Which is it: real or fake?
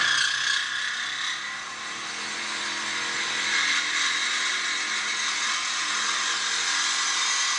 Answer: real